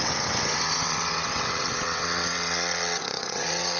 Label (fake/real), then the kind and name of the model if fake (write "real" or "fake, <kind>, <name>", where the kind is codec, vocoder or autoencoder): fake, vocoder, WaveNeXt